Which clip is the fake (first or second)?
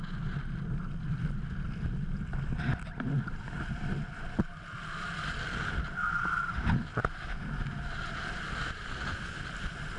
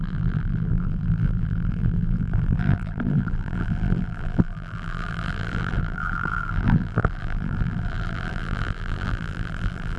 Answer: second